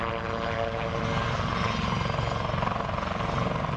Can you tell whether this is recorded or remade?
recorded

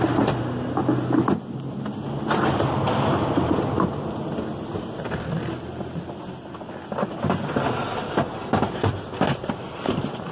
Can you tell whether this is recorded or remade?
recorded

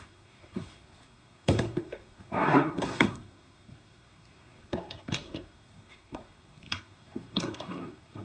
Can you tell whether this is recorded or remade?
remade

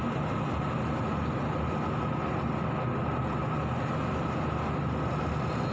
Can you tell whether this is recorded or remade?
recorded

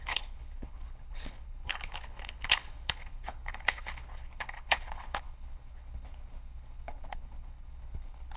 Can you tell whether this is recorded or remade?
remade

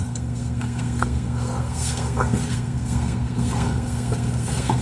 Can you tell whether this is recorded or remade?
remade